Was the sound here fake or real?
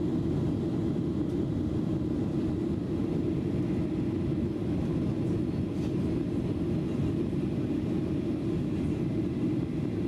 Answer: real